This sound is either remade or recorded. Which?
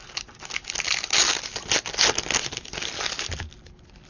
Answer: recorded